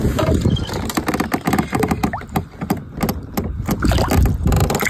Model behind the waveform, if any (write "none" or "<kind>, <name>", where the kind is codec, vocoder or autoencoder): none